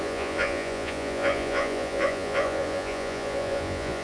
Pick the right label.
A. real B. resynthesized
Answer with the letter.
B